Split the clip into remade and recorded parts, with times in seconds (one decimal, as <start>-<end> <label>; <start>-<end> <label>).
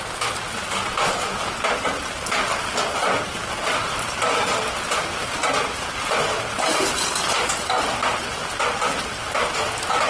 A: 0.0-10.1 recorded